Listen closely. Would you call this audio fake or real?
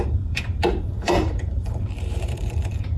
fake